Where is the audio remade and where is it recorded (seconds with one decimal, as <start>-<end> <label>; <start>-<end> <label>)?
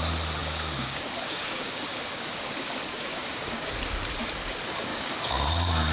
0.0-0.4 recorded; 0.4-3.7 remade; 3.7-4.9 recorded; 4.9-5.5 remade; 5.5-5.9 recorded